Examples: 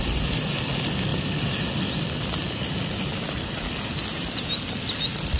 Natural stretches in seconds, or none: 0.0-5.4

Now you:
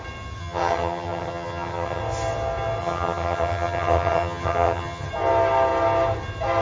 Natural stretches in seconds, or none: 0.0-0.4; 2.0-2.8; 5.1-6.6

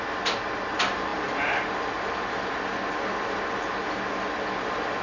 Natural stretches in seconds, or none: 0.0-5.0